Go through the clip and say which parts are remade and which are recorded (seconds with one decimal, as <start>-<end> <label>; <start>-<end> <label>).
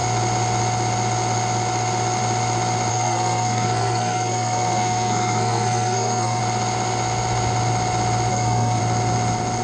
0.0-2.9 recorded; 2.9-6.4 remade; 6.4-8.3 recorded; 8.3-8.8 remade; 8.8-9.6 recorded